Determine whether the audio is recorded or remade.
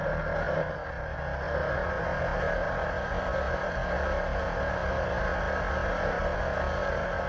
recorded